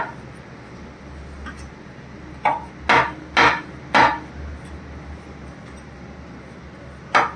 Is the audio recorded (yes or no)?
yes